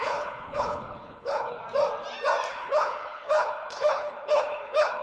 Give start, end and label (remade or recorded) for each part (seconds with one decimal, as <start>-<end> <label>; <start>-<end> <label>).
0.0-1.6 remade; 1.6-2.5 recorded; 2.5-5.0 remade